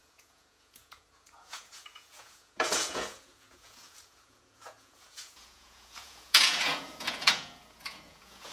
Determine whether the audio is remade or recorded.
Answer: remade